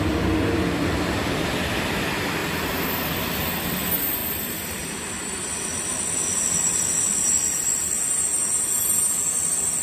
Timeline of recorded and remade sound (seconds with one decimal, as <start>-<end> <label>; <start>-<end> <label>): 0.0-2.4 recorded; 2.4-3.1 remade; 3.1-4.2 recorded; 4.2-4.9 remade; 4.9-9.8 recorded